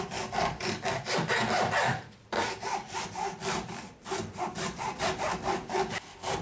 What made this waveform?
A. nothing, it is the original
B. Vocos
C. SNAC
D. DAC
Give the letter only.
A